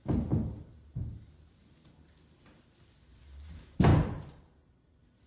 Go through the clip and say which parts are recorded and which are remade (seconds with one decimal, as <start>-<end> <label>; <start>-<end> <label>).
0.0-5.3 remade